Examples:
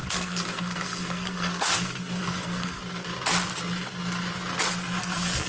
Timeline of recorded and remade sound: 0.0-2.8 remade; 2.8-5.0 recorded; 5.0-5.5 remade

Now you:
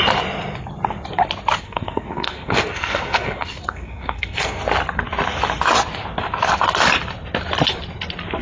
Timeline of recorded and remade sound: 0.0-1.6 recorded; 1.6-4.6 remade; 4.6-8.4 recorded

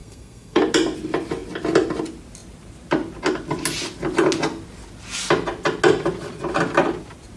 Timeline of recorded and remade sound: 0.0-0.6 remade; 0.6-7.4 recorded